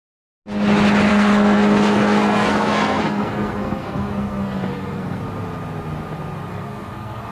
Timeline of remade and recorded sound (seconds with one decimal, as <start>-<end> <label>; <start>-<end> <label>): 0.0-1.1 recorded; 1.1-5.2 remade; 5.2-6.5 recorded; 6.5-7.3 remade